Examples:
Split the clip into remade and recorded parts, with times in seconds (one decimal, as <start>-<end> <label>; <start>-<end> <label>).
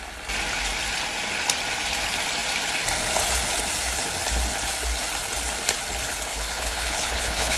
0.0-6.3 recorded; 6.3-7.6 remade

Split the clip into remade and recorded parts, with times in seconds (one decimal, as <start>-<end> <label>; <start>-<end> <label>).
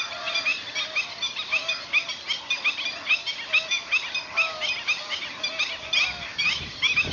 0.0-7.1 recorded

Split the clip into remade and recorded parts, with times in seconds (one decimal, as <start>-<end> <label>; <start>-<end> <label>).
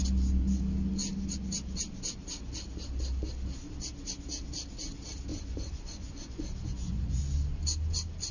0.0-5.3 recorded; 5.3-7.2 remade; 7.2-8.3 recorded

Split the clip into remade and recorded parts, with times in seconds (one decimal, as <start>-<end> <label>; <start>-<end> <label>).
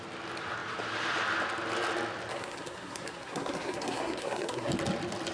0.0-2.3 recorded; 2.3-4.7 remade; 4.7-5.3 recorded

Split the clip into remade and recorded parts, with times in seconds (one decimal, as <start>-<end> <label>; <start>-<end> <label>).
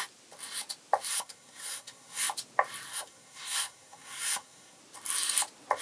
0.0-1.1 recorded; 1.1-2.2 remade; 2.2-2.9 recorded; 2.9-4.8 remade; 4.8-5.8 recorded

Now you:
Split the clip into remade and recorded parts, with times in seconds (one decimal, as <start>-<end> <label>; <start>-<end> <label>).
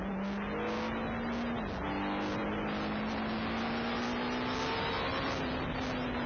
0.0-6.3 recorded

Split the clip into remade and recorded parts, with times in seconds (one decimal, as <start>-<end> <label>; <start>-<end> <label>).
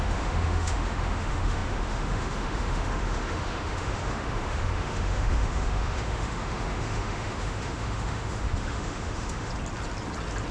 0.0-9.5 remade; 9.5-10.5 recorded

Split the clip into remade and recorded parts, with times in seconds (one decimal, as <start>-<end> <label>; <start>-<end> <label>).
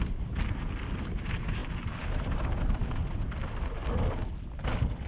0.0-5.1 recorded